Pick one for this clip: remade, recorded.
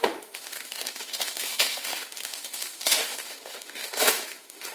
remade